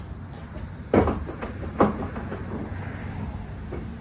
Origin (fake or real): real